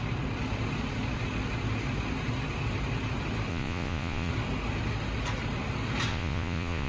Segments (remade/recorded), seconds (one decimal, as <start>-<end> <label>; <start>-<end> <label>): 0.0-3.5 recorded; 3.5-4.3 remade; 4.3-6.1 recorded; 6.1-6.9 remade